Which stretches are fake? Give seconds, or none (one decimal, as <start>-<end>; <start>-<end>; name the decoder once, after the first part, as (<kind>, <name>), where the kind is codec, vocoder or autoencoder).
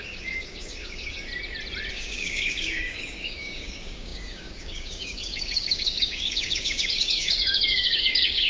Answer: 0.0-1.3 (codec, DAC); 1.9-8.5